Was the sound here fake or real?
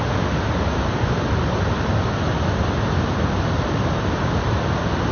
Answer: real